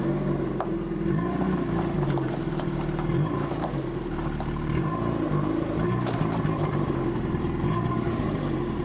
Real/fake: fake